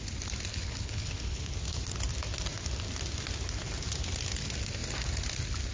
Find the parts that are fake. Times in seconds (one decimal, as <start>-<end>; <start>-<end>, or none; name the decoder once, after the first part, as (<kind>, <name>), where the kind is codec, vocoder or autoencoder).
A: 0.5-1.5 (codec, HILCodec)